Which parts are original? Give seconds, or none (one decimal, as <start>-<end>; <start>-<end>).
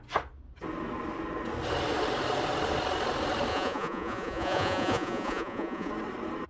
0.0-3.5; 5.9-6.5